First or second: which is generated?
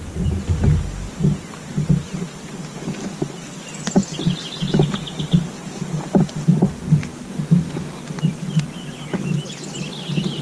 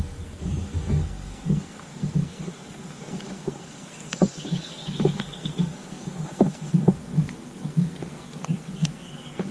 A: second